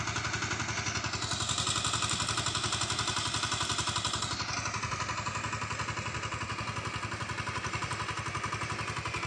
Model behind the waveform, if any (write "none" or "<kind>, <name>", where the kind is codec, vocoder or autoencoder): none